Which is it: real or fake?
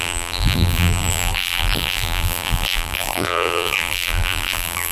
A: fake